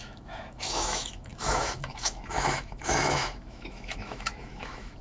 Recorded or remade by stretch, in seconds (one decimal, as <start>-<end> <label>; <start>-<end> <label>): 0.0-5.0 remade